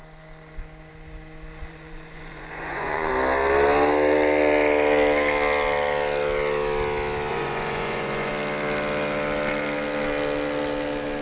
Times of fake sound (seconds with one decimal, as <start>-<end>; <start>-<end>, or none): 1.6-3.1; 7.3-8.3